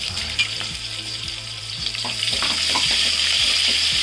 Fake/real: fake